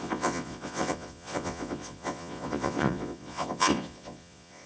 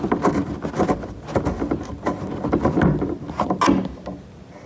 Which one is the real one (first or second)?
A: second